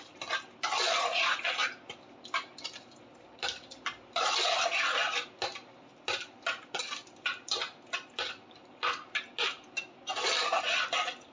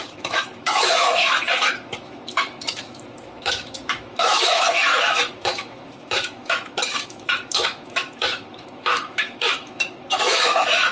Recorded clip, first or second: first